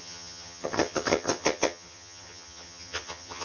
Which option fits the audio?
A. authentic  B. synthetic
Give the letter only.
B